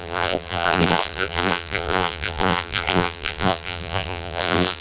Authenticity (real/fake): fake